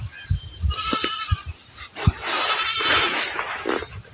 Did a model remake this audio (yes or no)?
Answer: no